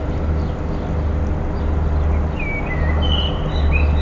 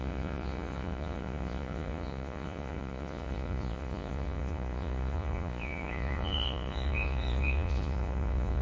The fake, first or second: second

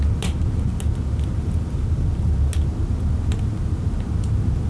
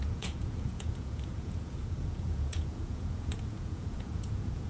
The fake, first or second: second